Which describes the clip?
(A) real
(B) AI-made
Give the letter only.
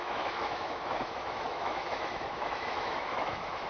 B